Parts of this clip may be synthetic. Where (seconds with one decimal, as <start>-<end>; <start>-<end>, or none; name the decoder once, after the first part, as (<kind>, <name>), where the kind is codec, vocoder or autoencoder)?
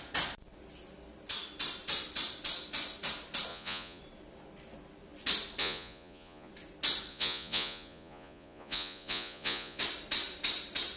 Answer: 3.5-4.0 (vocoder, Vocos); 5.6-6.5; 7.1-9.8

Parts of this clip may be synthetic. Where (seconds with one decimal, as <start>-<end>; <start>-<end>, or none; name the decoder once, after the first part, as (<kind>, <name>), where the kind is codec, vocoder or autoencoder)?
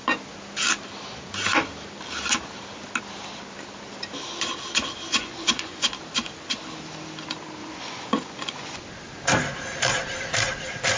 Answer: 5.1-5.9 (vocoder, Vocos); 7.6-8.8